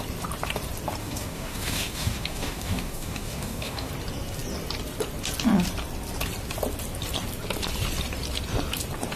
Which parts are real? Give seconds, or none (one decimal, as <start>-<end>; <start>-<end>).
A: 0.0-1.0; 3.9-9.2